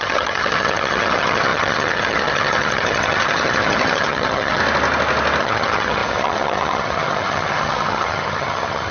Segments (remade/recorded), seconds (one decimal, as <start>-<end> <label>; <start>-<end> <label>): 0.0-4.6 remade; 4.6-5.4 recorded; 5.4-8.9 remade